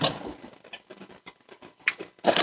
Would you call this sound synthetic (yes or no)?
no